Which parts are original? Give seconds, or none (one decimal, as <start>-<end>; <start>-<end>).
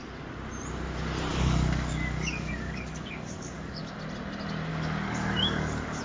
0.0-1.3; 3.8-4.7